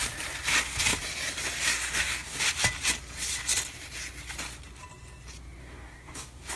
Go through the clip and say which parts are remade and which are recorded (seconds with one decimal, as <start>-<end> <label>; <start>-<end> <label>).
0.0-1.7 recorded; 1.7-2.4 remade; 2.4-5.6 recorded; 5.6-6.6 remade